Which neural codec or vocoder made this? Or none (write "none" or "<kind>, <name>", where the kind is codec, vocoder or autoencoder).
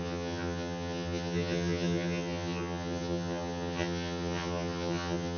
vocoder, HiFi-GAN